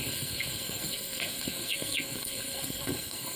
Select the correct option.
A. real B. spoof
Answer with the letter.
B